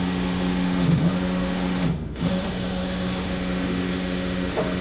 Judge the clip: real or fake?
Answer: fake